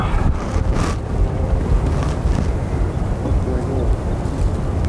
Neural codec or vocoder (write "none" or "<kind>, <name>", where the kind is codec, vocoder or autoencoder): none